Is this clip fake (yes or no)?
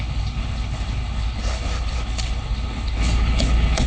yes